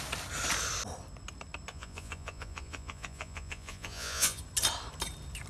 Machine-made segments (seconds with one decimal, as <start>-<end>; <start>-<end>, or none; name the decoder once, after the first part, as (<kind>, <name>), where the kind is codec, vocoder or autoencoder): 1.7-4.4 (vocoder, Vocos)

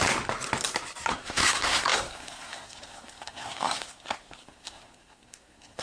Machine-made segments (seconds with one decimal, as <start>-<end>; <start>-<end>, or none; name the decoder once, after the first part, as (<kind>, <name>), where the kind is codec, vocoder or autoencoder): 1.1-5.8 (codec, SNAC)

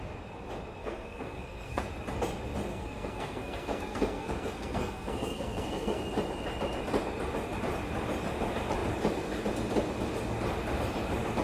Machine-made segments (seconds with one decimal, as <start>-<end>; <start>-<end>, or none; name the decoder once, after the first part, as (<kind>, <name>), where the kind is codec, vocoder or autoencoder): 0.8-1.8 (codec, SNAC); 2.7-6.0

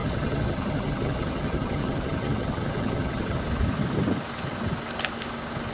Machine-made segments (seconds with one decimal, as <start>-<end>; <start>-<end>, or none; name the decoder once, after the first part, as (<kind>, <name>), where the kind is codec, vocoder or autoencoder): 0.0-3.4 (vocoder, HiFi-GAN)

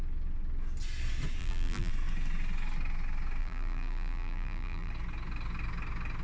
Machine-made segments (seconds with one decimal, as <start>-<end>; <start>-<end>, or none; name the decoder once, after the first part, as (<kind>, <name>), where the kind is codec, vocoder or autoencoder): 1.4-1.9 (vocoder, BigVGAN v2); 3.4-4.9

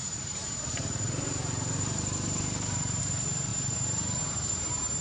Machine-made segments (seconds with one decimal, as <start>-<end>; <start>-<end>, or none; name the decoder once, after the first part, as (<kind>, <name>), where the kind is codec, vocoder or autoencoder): 0.0-5.0 (vocoder, BigVGAN v2)

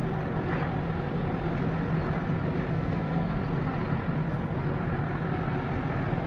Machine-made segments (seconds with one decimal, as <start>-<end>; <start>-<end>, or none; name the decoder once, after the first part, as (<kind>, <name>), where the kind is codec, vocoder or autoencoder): 2.7-3.4 (codec, SNAC)

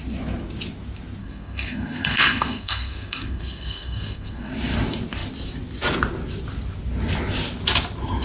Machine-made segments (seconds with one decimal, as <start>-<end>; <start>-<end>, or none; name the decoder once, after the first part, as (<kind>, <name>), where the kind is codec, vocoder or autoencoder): 1.2-4.5 (codec, SNAC)